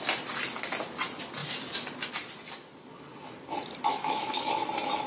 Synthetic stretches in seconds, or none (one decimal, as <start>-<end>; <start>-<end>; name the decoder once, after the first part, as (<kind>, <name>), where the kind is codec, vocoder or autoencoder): 3.9-4.5 (autoencoder, DAC-VAE)